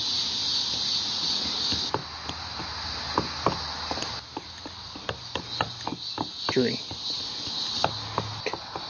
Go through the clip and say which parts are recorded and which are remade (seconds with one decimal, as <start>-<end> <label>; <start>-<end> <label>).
0.0-8.9 recorded